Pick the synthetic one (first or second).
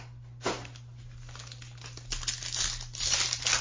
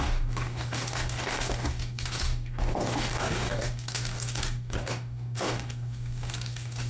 second